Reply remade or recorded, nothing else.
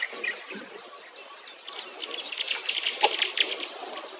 recorded